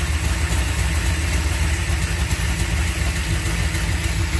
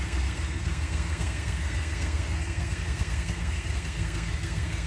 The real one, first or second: first